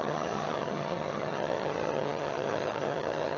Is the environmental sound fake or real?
fake